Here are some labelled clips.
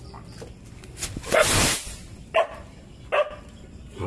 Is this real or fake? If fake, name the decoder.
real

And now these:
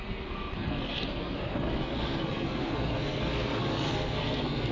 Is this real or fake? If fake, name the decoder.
fake, codec, SNAC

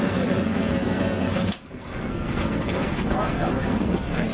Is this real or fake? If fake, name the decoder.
fake, codec, SNAC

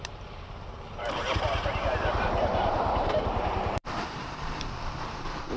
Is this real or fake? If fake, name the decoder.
fake, vocoder, BigVGAN v2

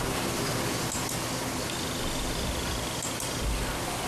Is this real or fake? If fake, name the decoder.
real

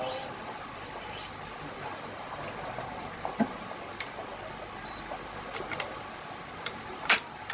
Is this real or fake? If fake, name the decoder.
real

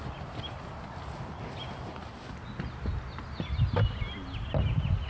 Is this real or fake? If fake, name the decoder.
real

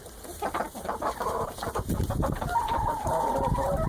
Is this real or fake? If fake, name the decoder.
real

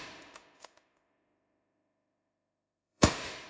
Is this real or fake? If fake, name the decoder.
fake, autoencoder, DAC-VAE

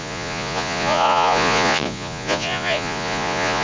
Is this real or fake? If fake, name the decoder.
fake, vocoder, Vocos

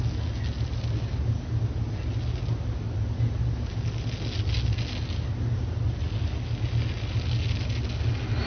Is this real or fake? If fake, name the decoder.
real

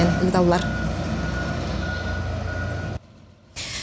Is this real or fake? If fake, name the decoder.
real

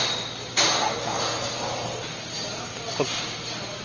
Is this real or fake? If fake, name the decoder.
real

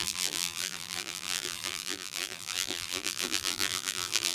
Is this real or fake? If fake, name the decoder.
fake, vocoder, BigVGAN v2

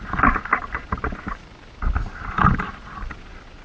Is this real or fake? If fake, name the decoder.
fake, vocoder, BigVGAN v2